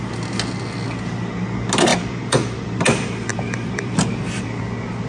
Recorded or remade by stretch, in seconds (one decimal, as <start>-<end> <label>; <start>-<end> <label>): 0.0-1.9 recorded; 1.9-2.8 remade; 2.8-3.3 recorded; 3.3-4.6 remade; 4.6-5.1 recorded